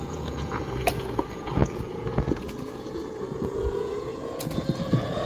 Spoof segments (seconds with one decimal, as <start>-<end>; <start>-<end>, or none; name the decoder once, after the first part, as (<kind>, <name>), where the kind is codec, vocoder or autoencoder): 0.0-5.3 (vocoder, Vocos)